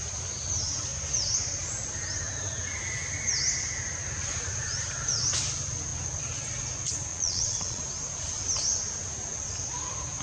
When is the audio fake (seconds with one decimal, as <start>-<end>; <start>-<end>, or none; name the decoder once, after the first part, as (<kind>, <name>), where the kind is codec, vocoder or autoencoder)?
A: 7.1-7.8 (vocoder, Vocos)